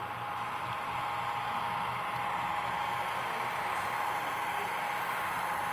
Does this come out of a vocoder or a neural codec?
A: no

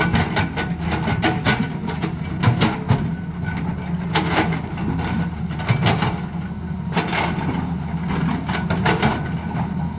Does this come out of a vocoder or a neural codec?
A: no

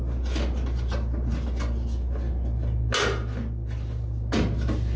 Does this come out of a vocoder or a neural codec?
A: no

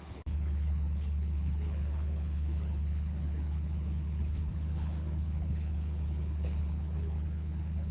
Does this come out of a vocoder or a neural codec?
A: yes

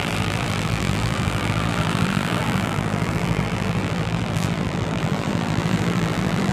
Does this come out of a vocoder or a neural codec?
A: yes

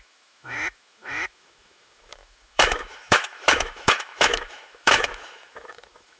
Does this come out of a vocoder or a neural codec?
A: yes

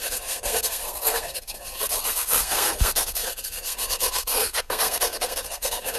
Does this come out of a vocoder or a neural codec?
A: yes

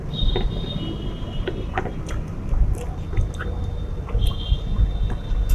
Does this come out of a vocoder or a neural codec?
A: no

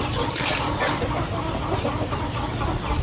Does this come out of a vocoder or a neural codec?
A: no